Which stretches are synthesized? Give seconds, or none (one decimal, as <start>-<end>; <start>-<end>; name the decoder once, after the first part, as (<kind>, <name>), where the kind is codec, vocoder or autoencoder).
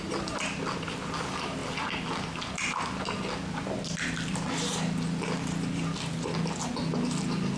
none